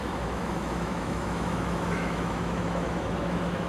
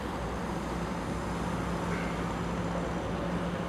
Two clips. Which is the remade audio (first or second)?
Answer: first